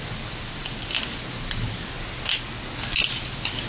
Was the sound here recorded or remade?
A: recorded